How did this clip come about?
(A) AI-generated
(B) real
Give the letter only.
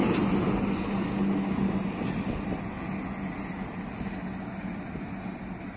B